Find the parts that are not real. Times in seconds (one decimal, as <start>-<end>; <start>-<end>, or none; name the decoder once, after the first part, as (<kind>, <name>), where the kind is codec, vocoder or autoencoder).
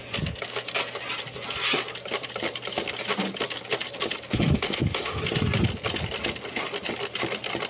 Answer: 4.3-5.2 (autoencoder, DAC-VAE)